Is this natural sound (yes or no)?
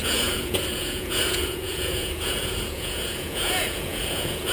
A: no